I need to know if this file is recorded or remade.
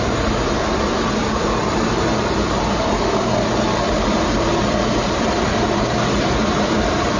remade